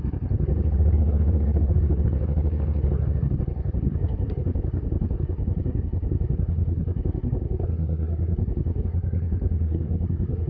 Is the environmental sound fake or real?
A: fake